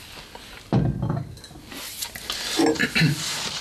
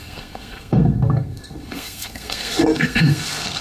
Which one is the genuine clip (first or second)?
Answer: first